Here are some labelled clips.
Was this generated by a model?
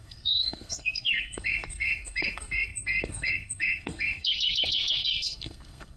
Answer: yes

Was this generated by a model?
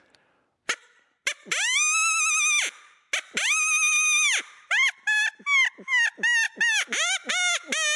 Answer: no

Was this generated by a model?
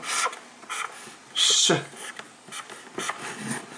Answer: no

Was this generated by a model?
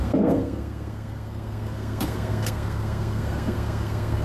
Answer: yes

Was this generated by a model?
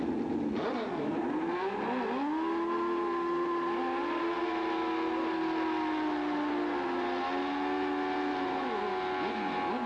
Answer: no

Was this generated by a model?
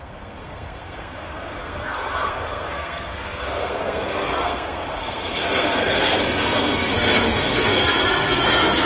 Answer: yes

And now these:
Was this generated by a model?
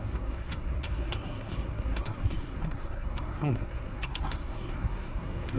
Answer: yes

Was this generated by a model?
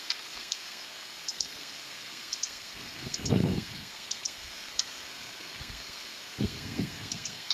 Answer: yes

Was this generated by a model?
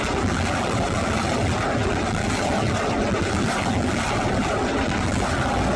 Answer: no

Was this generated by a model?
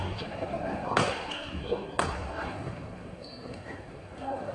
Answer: yes